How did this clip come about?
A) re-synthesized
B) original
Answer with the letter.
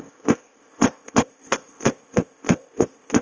A